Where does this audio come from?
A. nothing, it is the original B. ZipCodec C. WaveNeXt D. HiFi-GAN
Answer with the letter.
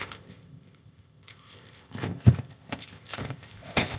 B